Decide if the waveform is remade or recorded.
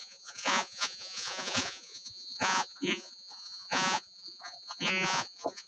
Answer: remade